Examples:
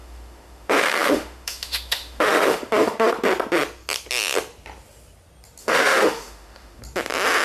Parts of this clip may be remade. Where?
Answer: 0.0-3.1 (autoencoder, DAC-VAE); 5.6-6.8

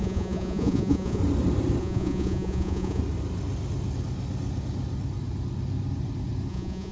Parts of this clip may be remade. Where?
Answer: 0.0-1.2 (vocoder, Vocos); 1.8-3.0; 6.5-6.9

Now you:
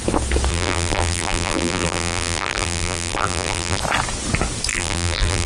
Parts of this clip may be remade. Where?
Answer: 0.5-3.8 (vocoder, BigVGAN v2); 4.7-5.5

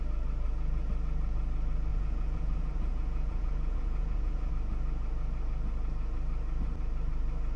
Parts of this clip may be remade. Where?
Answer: 1.9-4.5 (vocoder, Vocos)

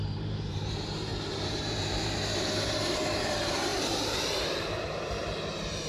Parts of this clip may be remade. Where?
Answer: 0.0-3.7 (vocoder, BigVGAN v2); 4.8-5.2

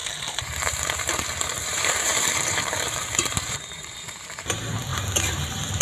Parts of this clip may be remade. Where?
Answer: 0.0-5.8 (vocoder, BigVGAN v2)